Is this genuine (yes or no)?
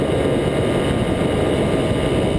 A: yes